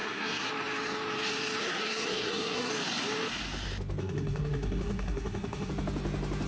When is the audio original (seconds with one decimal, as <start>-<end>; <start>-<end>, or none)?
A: 0.5-1.6; 2.7-4.0; 5.7-6.5